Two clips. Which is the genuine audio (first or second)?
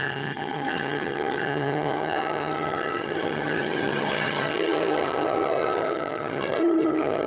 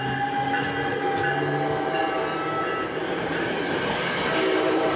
second